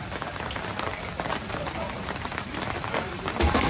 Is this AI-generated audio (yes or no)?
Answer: yes